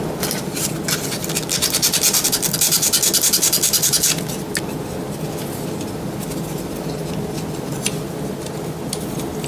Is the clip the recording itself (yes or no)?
yes